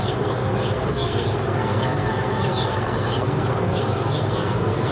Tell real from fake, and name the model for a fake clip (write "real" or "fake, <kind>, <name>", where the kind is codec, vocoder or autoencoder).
fake, codec, SNAC